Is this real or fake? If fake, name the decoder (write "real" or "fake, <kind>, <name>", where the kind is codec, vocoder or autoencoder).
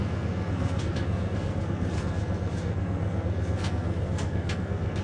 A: fake, codec, SNAC